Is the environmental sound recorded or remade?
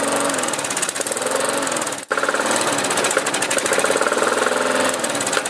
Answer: recorded